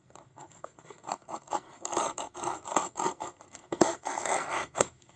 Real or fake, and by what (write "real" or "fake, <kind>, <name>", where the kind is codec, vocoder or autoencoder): fake, codec, SNAC